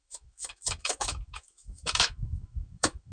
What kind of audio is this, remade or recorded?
remade